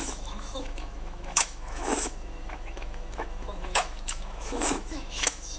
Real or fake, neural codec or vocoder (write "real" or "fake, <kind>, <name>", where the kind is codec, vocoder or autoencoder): fake, autoencoder, DAC-VAE